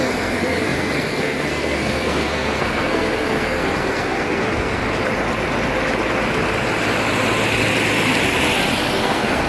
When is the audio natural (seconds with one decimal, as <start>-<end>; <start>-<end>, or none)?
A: 4.8-9.0